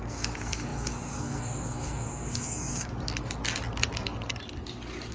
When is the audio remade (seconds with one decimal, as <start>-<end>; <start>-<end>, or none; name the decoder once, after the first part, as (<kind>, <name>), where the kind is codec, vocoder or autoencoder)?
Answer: 0.0-2.9 (codec, SNAC)